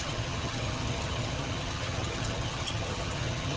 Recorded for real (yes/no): no